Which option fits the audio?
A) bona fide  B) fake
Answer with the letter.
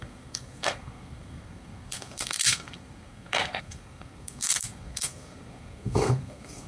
B